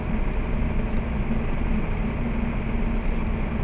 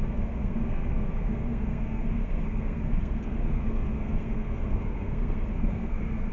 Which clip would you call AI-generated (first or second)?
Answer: second